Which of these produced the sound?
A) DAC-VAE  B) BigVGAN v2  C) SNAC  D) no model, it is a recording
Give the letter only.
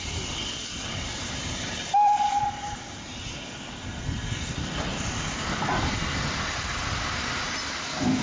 D